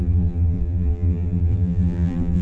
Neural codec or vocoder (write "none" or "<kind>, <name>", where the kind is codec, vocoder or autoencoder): vocoder, BigVGAN v2